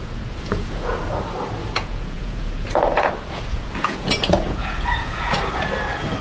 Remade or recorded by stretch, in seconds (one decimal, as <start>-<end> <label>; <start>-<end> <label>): 0.0-1.0 remade; 1.0-1.6 recorded; 1.6-5.3 remade; 5.3-6.2 recorded